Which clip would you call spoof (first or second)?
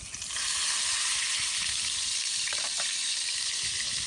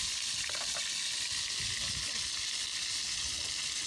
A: first